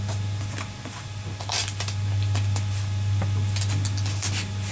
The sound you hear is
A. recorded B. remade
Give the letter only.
A